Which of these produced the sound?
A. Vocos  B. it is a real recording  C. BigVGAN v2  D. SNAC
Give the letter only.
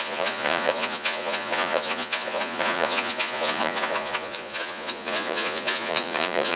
A